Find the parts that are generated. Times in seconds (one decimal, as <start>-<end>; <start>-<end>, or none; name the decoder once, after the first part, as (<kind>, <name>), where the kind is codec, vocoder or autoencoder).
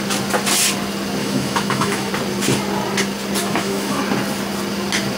1.2-2.1 (autoencoder, DAC-VAE); 3.4-4.0